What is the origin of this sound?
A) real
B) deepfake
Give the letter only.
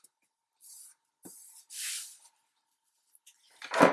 A